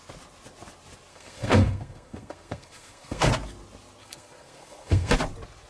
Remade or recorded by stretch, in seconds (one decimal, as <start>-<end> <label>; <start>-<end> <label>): 0.0-1.1 recorded; 1.1-3.3 remade; 3.3-4.0 recorded; 4.0-5.1 remade; 5.1-5.7 recorded